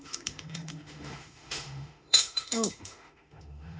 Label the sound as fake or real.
fake